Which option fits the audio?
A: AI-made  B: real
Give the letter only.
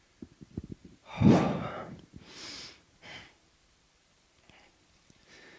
A